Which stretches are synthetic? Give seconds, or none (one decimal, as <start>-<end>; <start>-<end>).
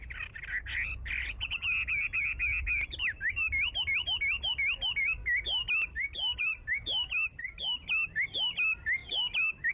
9.0-9.7